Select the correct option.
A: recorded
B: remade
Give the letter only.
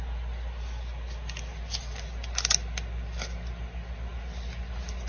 A